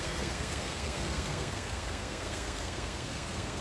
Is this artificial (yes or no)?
yes